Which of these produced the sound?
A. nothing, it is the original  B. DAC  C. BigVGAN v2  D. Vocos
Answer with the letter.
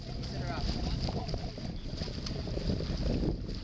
A